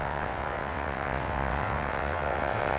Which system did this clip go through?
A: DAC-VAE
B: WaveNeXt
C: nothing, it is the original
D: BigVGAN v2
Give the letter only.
B